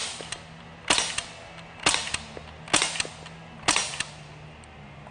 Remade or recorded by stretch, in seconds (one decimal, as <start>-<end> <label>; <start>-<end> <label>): 0.0-5.1 recorded